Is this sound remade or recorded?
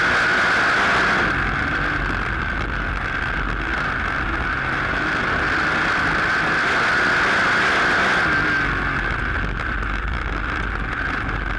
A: recorded